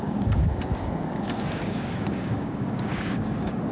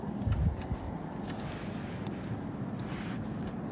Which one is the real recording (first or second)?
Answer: second